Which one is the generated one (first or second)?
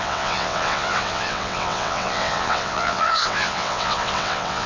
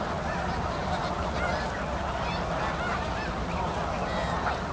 first